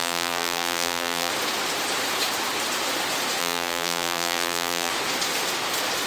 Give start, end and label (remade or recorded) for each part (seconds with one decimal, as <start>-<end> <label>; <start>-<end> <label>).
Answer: 0.0-1.3 remade; 1.3-3.4 recorded; 3.4-4.9 remade; 4.9-6.1 recorded